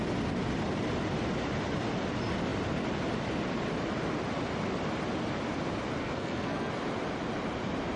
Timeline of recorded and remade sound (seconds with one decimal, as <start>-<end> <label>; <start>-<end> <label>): 0.0-6.0 recorded; 6.0-6.7 remade; 6.7-8.0 recorded